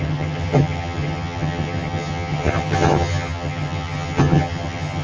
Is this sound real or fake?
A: fake